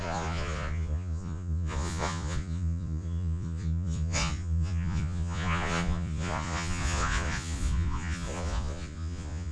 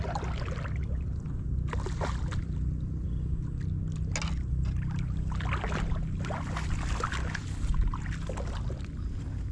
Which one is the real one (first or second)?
second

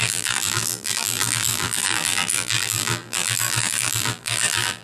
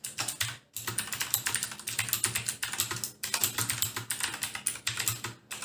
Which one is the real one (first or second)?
second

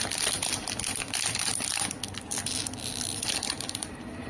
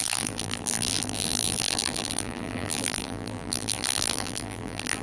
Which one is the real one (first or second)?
first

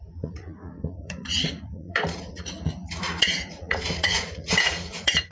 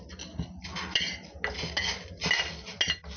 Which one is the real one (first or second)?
second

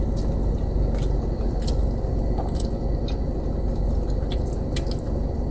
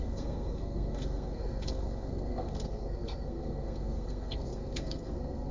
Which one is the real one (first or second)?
first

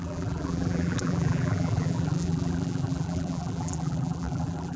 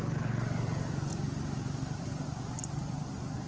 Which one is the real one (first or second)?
second